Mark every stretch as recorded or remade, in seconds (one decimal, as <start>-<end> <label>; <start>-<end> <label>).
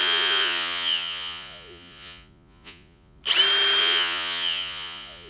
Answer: 0.0-3.2 remade; 3.2-3.8 recorded; 3.8-5.3 remade